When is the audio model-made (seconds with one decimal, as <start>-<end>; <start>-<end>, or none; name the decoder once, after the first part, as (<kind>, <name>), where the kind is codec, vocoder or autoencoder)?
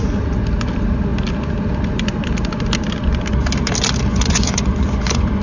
4.1-5.4 (vocoder, Vocos)